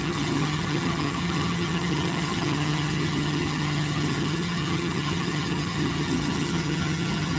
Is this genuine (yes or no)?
no